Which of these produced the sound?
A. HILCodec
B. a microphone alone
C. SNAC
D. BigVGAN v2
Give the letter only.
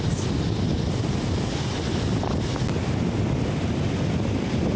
B